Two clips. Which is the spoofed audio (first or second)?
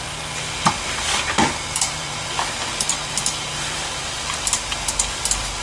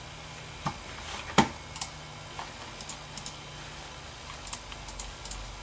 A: first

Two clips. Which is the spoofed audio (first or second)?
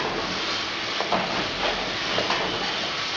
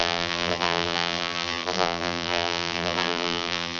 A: second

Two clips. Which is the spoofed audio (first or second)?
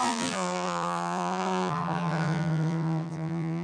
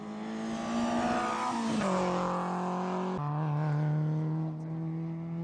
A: first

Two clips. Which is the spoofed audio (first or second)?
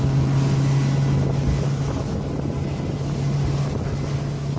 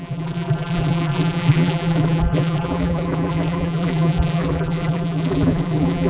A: second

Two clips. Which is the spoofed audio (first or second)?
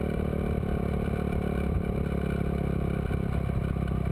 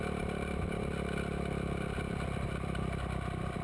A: second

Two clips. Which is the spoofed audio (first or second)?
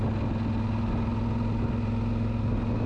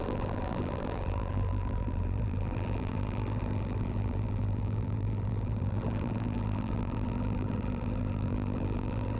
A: second